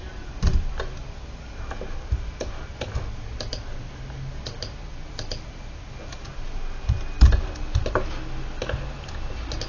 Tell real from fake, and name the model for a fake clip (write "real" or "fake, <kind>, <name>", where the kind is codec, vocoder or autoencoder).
real